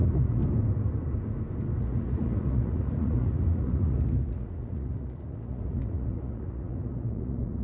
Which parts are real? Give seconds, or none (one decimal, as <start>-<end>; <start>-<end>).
0.4-1.8